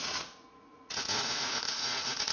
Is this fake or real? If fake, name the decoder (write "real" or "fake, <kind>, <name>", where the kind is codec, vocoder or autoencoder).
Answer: fake, vocoder, Vocos